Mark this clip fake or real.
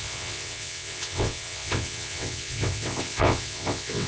fake